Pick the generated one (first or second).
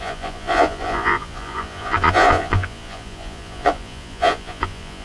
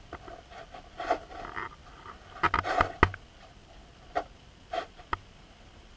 first